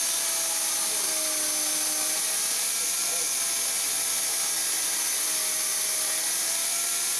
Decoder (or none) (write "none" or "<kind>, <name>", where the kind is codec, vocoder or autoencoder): none